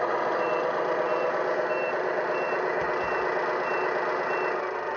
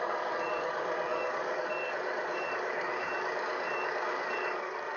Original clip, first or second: first